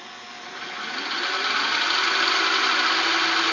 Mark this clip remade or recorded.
recorded